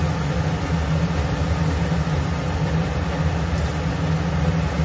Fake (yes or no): no